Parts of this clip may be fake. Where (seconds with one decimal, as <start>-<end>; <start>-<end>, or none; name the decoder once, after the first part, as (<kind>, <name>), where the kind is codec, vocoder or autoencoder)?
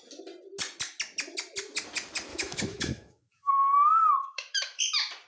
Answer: 2.3-3.5 (autoencoder, DAC-VAE); 4.2-4.8